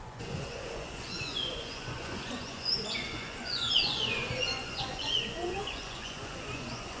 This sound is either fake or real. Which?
fake